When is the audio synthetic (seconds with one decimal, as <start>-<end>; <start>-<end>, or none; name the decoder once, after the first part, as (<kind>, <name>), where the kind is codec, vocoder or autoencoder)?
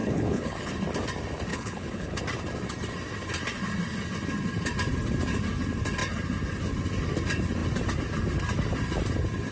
0.0-0.7 (codec, HILCodec); 1.5-2.2